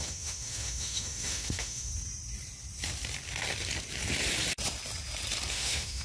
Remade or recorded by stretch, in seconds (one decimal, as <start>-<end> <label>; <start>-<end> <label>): 0.0-1.9 remade; 1.9-5.5 recorded; 5.5-6.0 remade